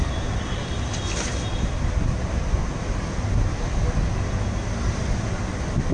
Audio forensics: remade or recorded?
recorded